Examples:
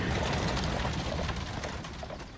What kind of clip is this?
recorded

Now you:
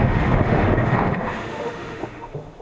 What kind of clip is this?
remade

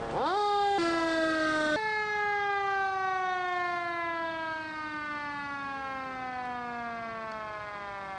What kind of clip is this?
recorded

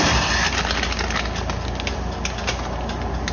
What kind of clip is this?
recorded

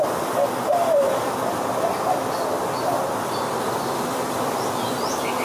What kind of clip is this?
recorded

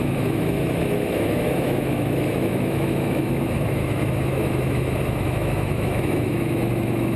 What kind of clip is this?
remade